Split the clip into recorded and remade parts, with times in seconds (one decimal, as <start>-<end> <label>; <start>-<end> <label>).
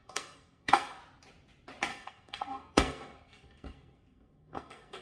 0.0-1.0 remade; 1.0-1.9 recorded; 1.9-5.0 remade